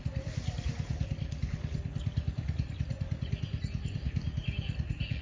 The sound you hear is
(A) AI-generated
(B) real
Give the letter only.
B